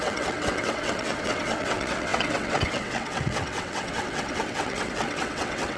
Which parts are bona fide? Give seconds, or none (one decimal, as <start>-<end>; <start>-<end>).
none

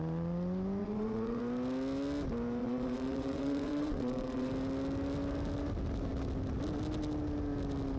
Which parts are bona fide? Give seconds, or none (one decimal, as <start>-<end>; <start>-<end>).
0.0-0.8; 1.4-2.6; 4.5-8.0

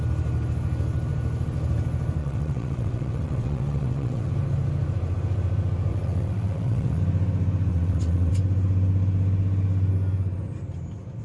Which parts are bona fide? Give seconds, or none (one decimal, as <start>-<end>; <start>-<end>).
0.0-2.2; 4.3-5.9; 7.0-7.7; 8.3-11.2

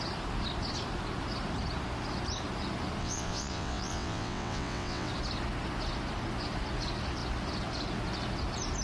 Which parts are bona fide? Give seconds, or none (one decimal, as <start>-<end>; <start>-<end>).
0.0-3.0; 5.1-8.8